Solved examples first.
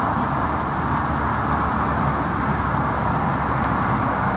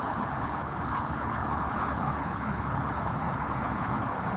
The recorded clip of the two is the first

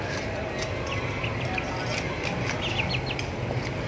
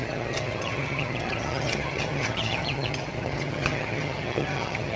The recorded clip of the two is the first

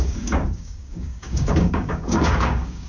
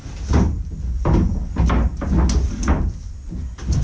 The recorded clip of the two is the second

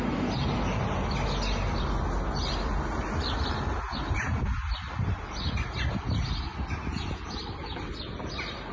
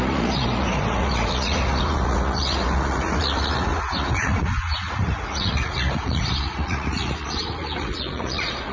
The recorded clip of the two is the first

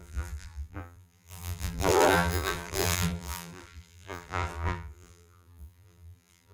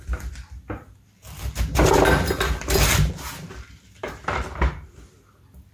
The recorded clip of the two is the second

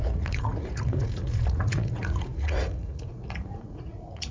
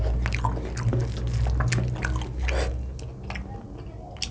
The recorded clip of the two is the second